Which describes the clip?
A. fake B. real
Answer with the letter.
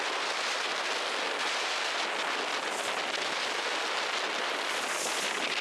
B